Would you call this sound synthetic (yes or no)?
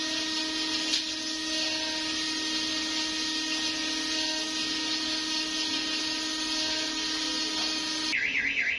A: no